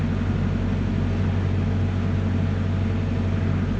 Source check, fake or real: real